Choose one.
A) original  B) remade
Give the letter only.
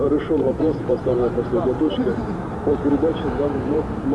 B